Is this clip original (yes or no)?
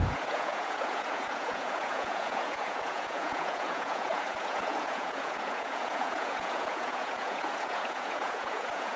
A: no